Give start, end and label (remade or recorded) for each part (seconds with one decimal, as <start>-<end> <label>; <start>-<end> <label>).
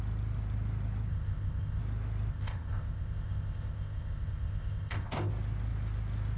0.0-1.1 recorded; 1.1-1.8 remade; 1.8-2.3 recorded; 2.3-5.3 remade; 5.3-6.4 recorded